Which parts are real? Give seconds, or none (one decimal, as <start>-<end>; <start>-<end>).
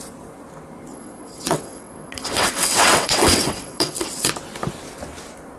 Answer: 0.0-0.9; 4.3-5.6